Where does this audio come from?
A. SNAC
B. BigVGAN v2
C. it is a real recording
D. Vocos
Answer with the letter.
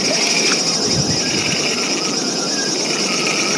C